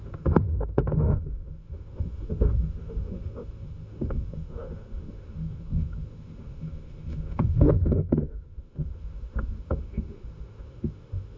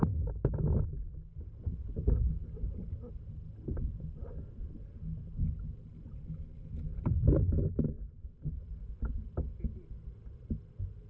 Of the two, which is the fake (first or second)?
first